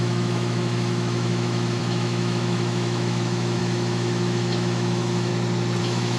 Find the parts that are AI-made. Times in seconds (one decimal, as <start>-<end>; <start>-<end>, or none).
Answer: 0.0-5.3; 5.8-6.2